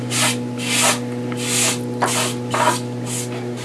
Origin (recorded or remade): recorded